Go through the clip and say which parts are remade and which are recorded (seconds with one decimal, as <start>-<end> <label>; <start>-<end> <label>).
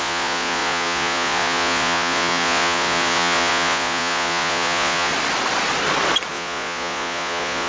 0.0-5.1 remade; 5.1-6.3 recorded; 6.3-7.7 remade